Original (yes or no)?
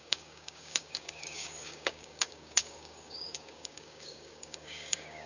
no